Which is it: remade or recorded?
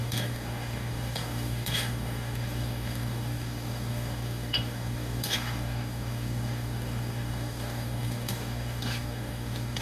remade